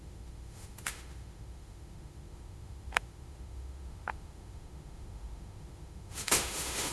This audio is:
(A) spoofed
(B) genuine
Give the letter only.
A